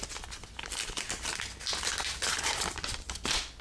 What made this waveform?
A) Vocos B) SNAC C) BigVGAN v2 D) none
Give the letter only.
D